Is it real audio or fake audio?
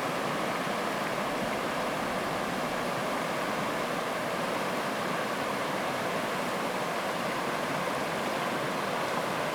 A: real